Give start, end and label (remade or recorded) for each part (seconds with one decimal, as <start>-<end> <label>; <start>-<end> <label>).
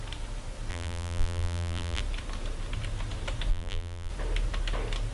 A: 0.0-0.7 recorded; 0.7-2.0 remade; 2.0-3.5 recorded; 3.5-4.1 remade; 4.1-5.1 recorded